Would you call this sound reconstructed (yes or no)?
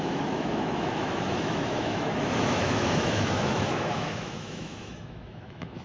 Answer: yes